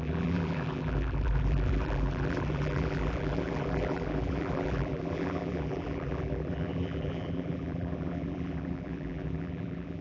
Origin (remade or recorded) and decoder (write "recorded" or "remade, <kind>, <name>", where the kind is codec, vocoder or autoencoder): remade, vocoder, BigVGAN v2